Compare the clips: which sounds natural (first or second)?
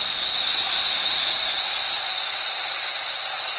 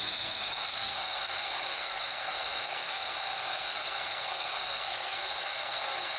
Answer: first